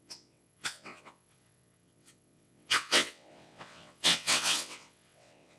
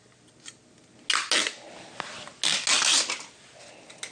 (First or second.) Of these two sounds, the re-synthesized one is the first